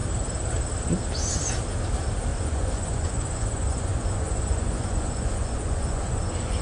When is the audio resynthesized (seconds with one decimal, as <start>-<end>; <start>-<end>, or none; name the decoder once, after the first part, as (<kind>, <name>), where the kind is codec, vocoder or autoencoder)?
2.3-6.6 (vocoder, Vocos)